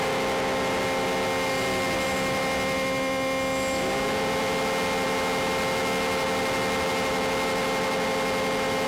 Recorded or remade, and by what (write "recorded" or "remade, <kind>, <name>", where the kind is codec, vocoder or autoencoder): recorded